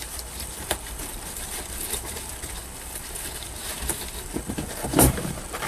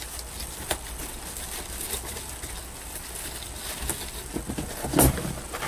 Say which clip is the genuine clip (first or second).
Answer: second